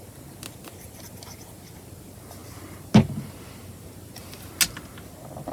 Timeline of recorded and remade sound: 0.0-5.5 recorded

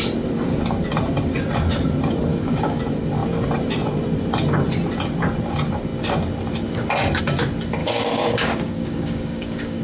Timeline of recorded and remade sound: 0.0-2.3 recorded; 2.3-2.8 remade; 2.8-7.8 recorded; 7.8-9.8 remade

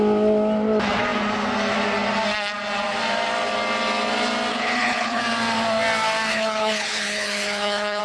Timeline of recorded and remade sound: 0.0-4.5 recorded; 4.5-5.2 remade; 5.2-6.3 recorded; 6.3-8.0 remade

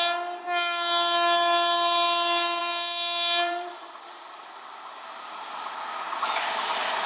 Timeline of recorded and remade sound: 0.0-2.6 recorded; 2.6-4.3 remade; 4.3-7.1 recorded